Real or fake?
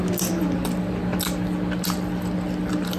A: real